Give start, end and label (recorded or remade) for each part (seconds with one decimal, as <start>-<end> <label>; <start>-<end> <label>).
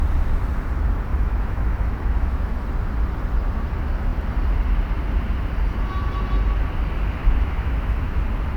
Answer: 0.0-1.1 recorded; 1.1-2.6 remade; 2.6-7.2 recorded; 7.2-8.2 remade; 8.2-8.6 recorded